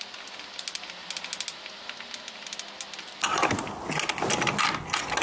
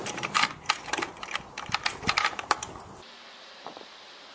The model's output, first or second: second